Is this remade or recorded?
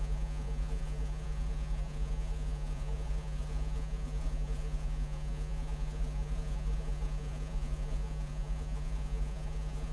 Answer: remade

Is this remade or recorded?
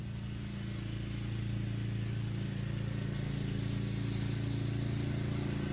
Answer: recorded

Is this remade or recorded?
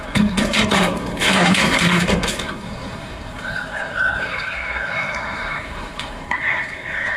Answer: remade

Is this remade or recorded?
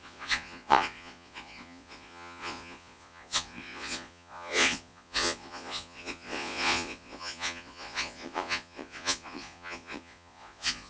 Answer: remade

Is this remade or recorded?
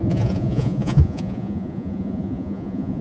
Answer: remade